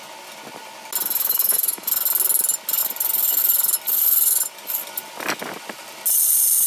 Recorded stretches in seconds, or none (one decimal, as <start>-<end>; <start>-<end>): 0.0-1.0; 1.9-6.7